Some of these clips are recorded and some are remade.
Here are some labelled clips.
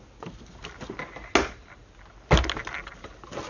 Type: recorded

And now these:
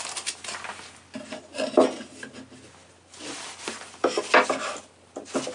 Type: recorded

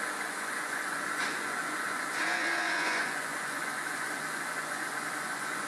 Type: remade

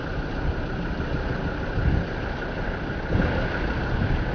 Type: recorded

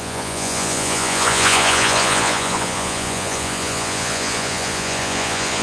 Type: remade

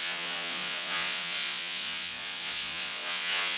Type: remade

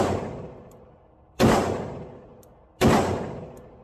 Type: recorded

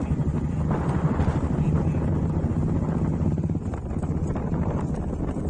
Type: recorded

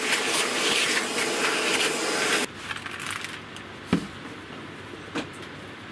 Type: recorded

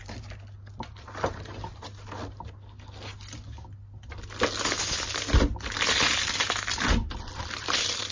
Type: recorded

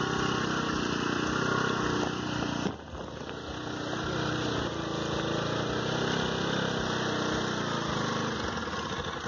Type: recorded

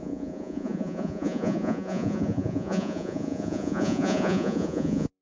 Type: remade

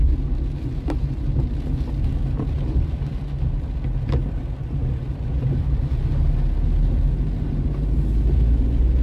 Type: recorded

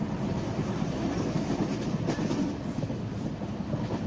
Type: recorded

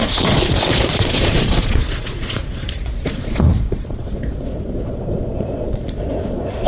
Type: remade